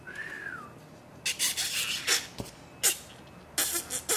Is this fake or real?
real